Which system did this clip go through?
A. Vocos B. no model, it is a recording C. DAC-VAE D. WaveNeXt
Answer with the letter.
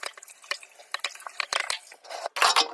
B